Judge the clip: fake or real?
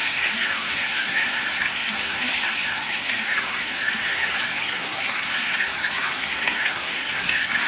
fake